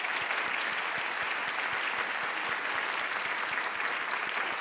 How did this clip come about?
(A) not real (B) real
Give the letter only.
B